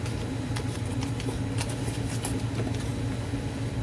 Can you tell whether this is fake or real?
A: real